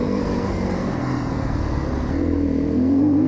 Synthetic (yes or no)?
yes